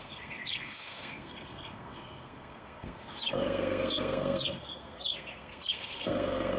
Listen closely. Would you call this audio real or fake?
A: fake